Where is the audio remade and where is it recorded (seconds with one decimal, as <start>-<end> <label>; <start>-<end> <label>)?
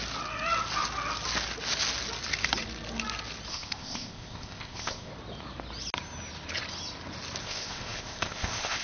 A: 0.0-3.5 recorded; 3.5-5.1 remade; 5.1-7.4 recorded; 7.4-8.8 remade